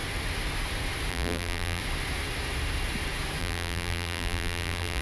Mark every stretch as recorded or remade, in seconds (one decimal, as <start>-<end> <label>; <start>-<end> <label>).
0.0-1.1 recorded; 1.1-1.8 remade; 1.8-3.4 recorded; 3.4-5.0 remade